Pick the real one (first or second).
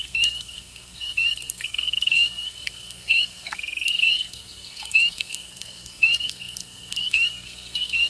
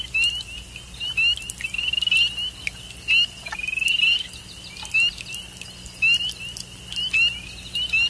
second